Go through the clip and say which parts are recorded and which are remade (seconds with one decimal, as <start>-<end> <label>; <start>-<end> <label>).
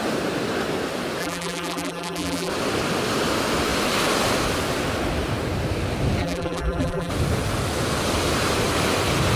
0.0-1.2 recorded; 1.2-2.5 remade; 2.5-6.2 recorded; 6.2-7.1 remade; 7.1-9.4 recorded